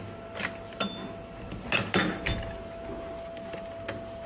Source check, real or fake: real